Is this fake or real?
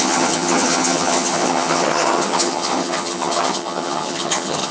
fake